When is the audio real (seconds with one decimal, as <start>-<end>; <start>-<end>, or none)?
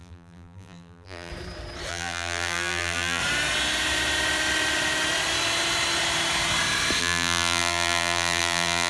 1.3-1.9; 3.2-7.0